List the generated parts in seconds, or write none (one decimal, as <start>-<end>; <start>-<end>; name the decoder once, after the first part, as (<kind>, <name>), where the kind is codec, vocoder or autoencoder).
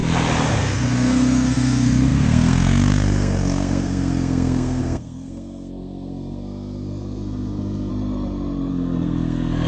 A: 0.6-7.9 (codec, SNAC); 8.7-9.7